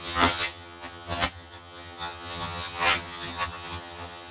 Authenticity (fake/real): fake